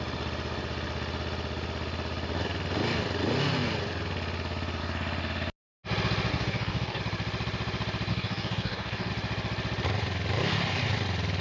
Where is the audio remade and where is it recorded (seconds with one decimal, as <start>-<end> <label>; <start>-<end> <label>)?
0.0-6.3 recorded; 6.3-7.0 remade; 7.0-8.1 recorded; 8.1-9.1 remade; 9.1-11.4 recorded